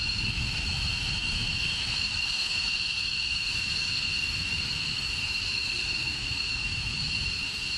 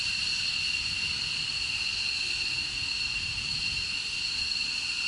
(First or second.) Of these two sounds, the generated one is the first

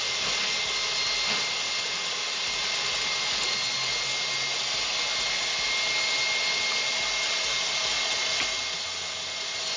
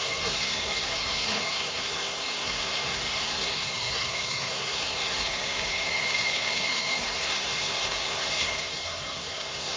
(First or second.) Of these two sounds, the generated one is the second